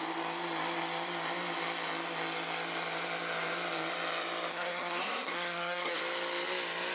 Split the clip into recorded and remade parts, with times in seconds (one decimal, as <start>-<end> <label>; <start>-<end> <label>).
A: 0.0-4.5 recorded; 4.5-6.0 remade; 6.0-6.9 recorded